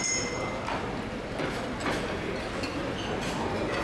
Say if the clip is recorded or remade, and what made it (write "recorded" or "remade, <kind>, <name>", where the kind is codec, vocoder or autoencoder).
recorded